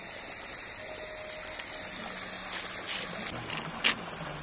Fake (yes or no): no